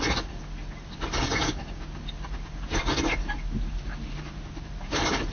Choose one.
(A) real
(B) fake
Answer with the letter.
A